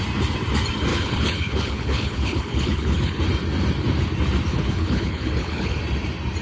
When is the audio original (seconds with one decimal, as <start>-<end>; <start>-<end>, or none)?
0.0-0.9; 3.2-4.5; 5.8-6.4

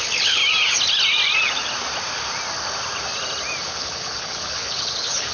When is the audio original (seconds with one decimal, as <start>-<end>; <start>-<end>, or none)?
0.4-3.6